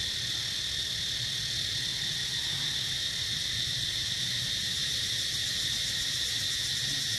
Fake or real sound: real